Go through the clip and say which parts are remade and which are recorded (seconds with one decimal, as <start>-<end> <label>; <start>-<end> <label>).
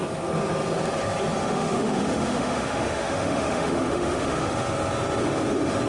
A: 0.0-1.4 recorded; 1.4-4.5 remade; 4.5-5.9 recorded